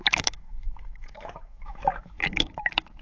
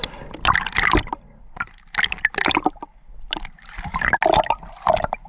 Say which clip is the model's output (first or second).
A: first